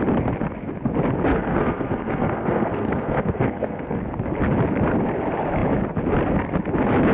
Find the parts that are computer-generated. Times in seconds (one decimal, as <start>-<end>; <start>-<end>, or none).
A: 1.3-4.0